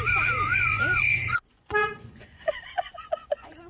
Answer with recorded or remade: remade